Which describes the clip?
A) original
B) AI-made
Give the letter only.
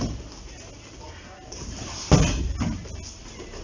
A